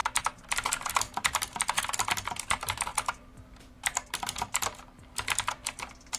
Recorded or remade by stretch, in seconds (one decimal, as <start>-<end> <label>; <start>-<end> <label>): 0.0-0.9 recorded; 0.9-6.2 remade

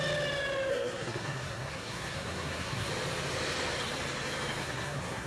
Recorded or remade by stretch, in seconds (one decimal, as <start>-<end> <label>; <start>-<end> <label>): 0.0-0.7 recorded; 0.7-2.9 remade; 2.9-4.6 recorded; 4.6-5.3 remade

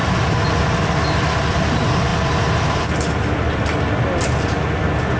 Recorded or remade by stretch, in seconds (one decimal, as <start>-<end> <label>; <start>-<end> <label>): 0.0-5.2 recorded